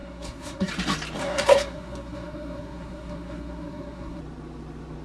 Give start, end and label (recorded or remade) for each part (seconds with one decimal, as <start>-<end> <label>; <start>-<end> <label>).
0.0-0.7 remade; 0.7-1.2 recorded; 1.2-4.2 remade; 4.2-5.0 recorded